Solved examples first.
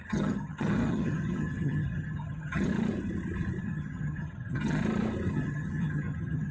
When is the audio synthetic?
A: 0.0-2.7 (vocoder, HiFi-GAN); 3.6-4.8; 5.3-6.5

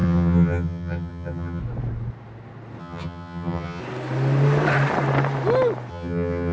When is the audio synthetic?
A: 0.0-1.6 (vocoder, HiFi-GAN); 2.8-3.8; 5.9-6.5

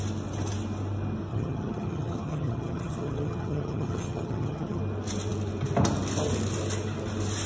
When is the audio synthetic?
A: 1.3-4.8 (vocoder, HiFi-GAN)

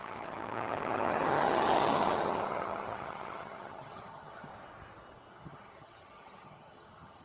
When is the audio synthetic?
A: 0.0-4.5 (vocoder, HiFi-GAN); 5.3-7.2

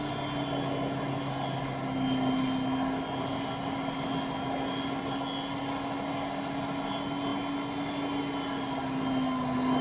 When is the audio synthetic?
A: none

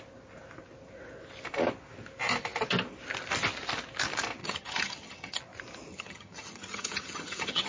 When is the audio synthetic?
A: 4.4-5.4 (vocoder, HiFi-GAN); 5.9-7.7

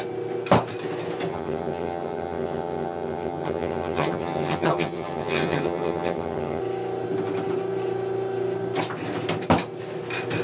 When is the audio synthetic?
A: 1.3-6.6 (vocoder, HiFi-GAN)